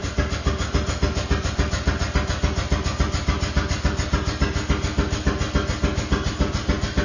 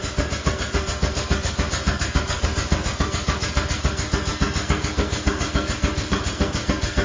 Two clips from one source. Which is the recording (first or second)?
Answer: first